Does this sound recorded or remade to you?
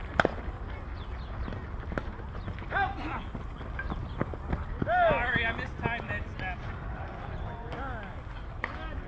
recorded